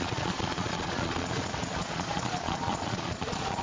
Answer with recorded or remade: remade